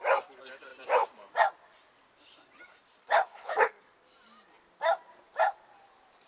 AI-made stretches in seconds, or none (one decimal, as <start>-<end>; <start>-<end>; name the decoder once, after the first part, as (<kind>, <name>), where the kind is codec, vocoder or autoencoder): 3.0-3.8 (codec, HILCodec)

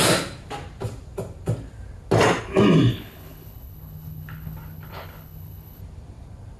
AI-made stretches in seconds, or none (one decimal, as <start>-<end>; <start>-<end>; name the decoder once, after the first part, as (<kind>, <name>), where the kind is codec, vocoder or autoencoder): 2.9-5.8 (codec, HILCodec)

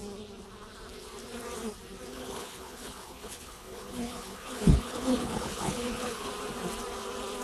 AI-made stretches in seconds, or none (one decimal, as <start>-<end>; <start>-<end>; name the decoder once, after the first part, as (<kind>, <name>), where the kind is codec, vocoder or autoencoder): 2.1-6.3 (codec, HILCodec)